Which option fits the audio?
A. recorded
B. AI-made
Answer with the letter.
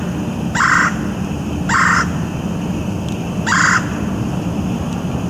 A